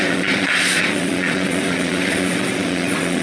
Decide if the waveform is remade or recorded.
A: remade